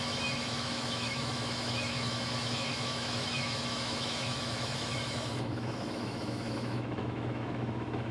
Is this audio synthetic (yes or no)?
yes